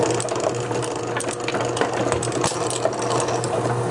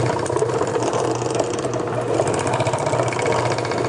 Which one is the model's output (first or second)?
second